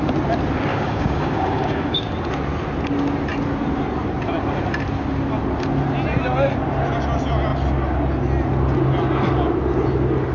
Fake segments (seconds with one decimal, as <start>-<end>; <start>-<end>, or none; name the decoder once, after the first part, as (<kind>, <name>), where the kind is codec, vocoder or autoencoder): 0.7-2.1 (codec, DAC)